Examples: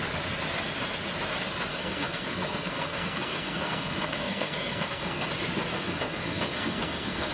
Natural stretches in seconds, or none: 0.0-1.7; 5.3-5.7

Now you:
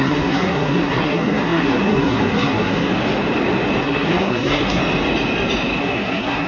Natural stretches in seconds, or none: 2.9-3.8; 4.8-5.8